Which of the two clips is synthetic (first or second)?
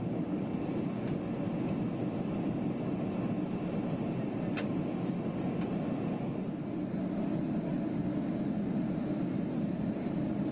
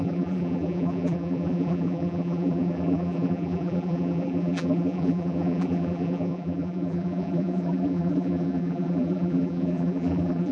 second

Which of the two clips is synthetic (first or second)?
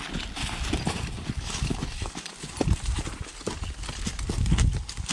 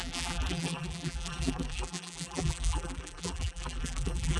second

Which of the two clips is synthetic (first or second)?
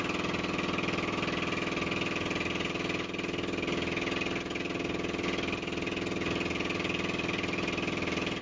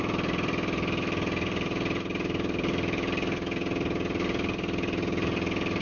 second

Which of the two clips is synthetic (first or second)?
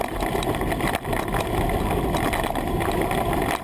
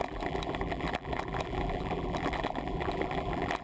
second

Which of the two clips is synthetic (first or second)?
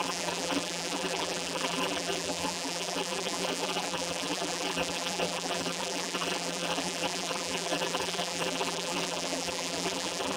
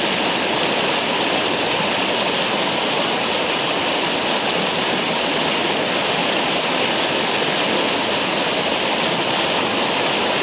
first